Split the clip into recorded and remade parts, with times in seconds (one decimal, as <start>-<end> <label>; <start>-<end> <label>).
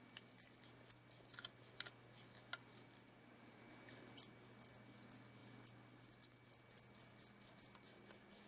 0.0-8.5 recorded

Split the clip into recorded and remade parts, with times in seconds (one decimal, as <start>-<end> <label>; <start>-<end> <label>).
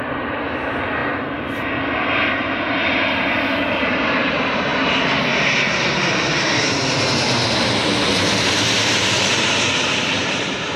0.0-1.0 remade; 1.0-3.6 recorded; 3.6-4.7 remade; 4.7-8.5 recorded; 8.5-10.8 remade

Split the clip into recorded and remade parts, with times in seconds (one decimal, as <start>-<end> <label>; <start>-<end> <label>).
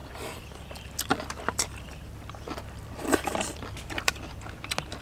0.0-0.7 remade; 0.7-1.1 recorded; 1.1-4.1 remade; 4.1-5.0 recorded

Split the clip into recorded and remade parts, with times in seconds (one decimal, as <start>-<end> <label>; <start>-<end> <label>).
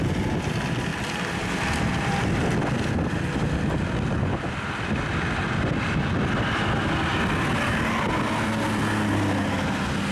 0.0-10.1 recorded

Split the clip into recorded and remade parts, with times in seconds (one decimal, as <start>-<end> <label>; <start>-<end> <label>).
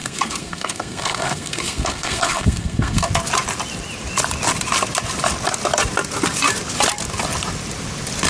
0.0-3.1 remade; 3.1-8.3 recorded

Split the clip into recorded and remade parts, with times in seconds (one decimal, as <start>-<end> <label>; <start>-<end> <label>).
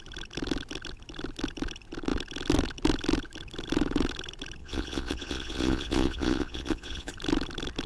0.0-4.6 recorded; 4.6-7.1 remade; 7.1-7.9 recorded